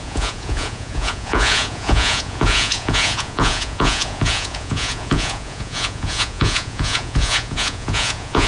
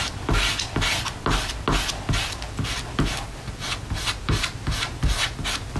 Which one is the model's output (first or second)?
first